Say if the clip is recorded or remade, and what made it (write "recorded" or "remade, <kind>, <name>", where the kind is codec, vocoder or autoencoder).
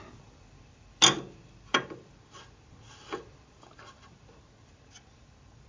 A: recorded